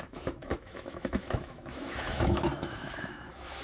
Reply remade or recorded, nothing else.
remade